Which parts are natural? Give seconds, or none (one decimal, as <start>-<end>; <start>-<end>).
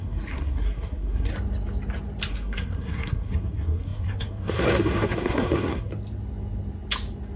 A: 1.3-2.3; 5.9-7.4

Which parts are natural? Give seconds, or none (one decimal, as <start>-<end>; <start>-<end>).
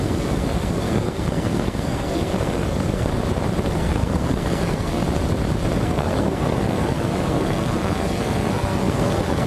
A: 3.1-3.7; 5.0-5.8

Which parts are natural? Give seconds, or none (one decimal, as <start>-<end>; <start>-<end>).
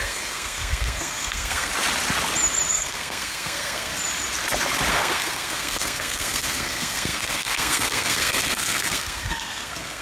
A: 1.7-2.7; 3.9-4.9